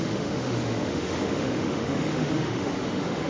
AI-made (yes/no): yes